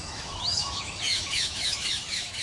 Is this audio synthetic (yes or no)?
yes